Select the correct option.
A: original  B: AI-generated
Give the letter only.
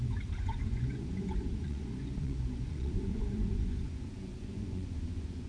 B